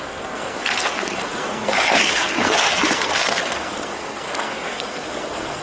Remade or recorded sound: remade